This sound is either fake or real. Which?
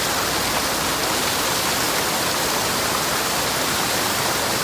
real